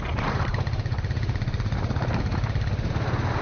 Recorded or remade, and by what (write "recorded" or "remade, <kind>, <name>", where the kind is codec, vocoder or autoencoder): remade, vocoder, BigVGAN v2